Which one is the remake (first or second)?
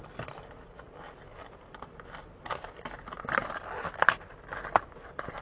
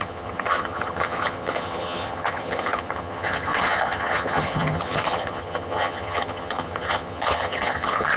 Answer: second